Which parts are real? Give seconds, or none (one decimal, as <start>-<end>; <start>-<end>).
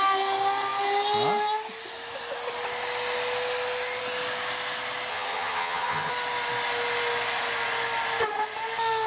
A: 0.0-5.1; 6.1-9.1